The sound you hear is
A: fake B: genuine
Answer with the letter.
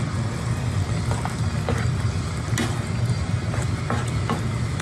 B